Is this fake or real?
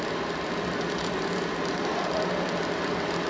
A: real